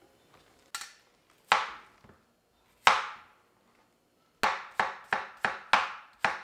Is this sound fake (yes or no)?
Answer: no